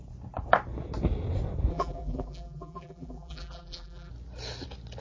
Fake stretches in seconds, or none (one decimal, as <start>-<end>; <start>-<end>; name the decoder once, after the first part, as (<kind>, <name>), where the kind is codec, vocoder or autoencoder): 1.7-4.1 (vocoder, BigVGAN v2)